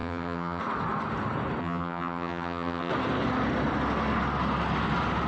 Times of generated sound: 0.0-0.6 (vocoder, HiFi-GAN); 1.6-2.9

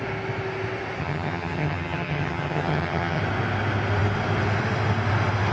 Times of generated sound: 1.0-3.2 (vocoder, HiFi-GAN)

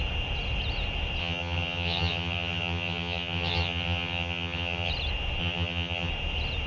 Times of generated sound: 1.2-4.9 (vocoder, HiFi-GAN); 5.4-6.1

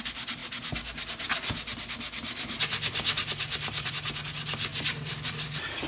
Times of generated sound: none

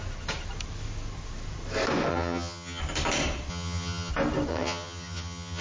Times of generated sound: 2.1-2.8 (vocoder, HiFi-GAN); 3.5-4.1; 4.5-5.6

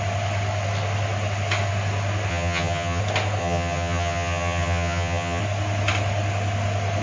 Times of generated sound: 2.3-3.0 (vocoder, HiFi-GAN); 3.4-5.4

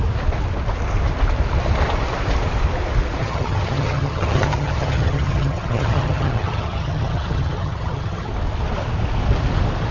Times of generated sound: 3.2-8.3 (vocoder, HiFi-GAN)

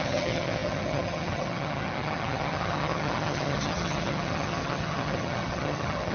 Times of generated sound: 0.0-6.1 (vocoder, HiFi-GAN)